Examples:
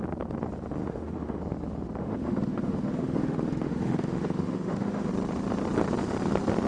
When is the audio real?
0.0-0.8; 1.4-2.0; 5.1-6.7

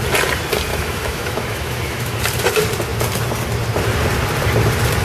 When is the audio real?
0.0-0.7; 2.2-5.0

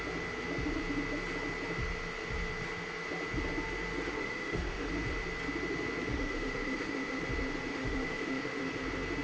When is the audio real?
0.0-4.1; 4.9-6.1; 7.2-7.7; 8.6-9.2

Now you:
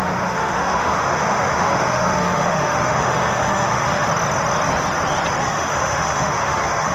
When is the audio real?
4.1-5.4

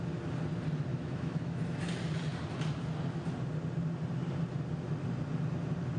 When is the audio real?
0.0-0.9; 1.6-6.0

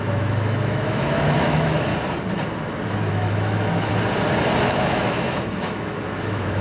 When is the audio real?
1.9-3.1; 3.9-4.6